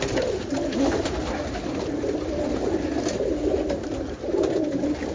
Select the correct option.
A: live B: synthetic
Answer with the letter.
A